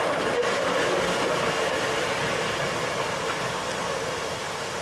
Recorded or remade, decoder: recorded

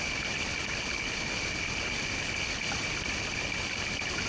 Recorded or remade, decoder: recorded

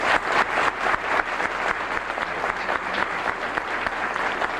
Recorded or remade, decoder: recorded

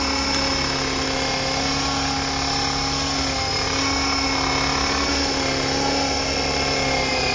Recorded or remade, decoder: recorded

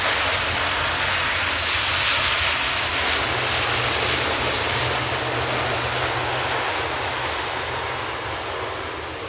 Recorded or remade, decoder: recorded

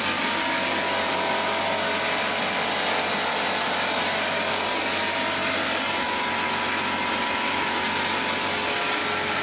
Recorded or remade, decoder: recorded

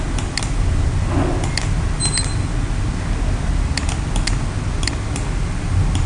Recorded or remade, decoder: recorded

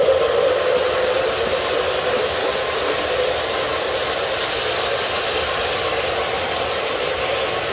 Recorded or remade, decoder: recorded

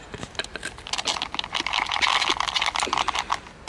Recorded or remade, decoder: recorded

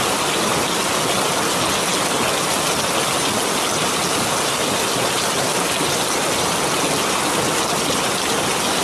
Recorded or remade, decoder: recorded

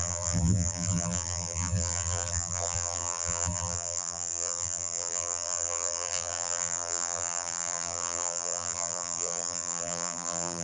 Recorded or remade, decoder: remade, vocoder, BigVGAN v2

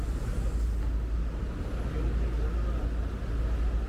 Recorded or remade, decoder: recorded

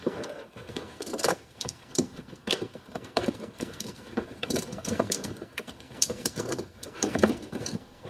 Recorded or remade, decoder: remade, codec, SNAC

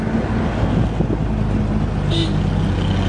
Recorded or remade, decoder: recorded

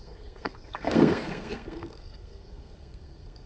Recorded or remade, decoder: remade, codec, SNAC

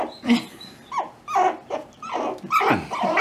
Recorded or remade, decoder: recorded